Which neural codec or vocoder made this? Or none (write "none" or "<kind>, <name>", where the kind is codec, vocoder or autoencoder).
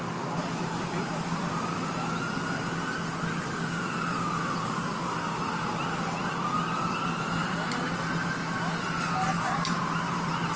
none